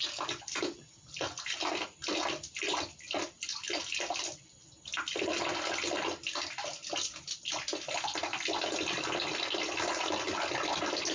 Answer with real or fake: real